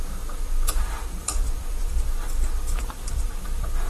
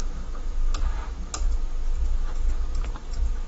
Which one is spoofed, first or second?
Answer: first